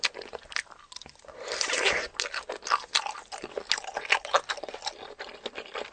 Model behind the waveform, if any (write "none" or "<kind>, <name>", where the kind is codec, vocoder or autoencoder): none